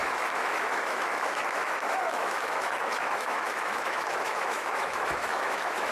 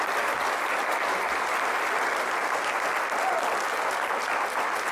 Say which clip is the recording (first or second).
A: second